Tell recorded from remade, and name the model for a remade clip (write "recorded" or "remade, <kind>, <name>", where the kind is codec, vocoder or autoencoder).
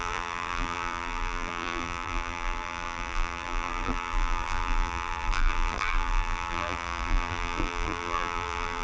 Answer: remade, vocoder, BigVGAN v2